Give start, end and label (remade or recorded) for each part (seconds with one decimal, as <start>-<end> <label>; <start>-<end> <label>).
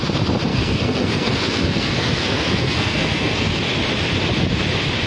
0.0-0.5 recorded; 0.5-3.6 remade; 3.6-5.1 recorded